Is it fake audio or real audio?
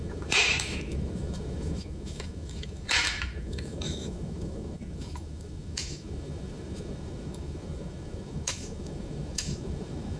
fake